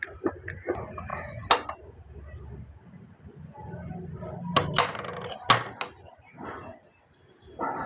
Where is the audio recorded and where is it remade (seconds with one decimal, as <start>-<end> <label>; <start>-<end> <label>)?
0.0-7.9 recorded